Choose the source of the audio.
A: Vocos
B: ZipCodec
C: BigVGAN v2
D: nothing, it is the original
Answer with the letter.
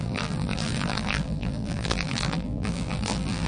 C